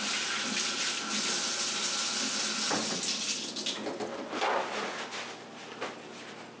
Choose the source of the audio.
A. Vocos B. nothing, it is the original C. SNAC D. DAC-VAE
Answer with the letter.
B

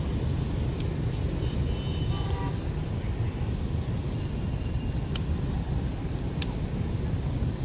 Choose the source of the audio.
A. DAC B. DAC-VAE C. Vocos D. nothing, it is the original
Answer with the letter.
D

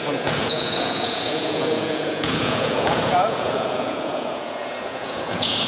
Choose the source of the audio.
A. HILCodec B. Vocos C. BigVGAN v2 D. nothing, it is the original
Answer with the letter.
B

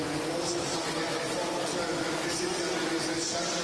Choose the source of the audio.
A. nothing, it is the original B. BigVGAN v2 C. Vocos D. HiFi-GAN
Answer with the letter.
A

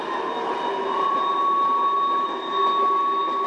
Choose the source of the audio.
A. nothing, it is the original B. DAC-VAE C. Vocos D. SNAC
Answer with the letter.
A